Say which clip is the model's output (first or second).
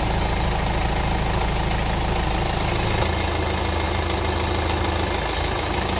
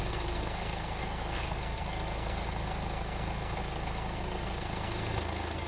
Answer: second